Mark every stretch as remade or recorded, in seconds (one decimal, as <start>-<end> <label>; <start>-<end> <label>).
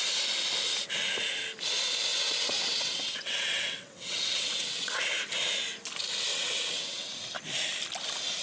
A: 0.0-2.1 recorded; 2.1-5.0 remade; 5.0-6.3 recorded; 6.3-7.1 remade; 7.1-8.4 recorded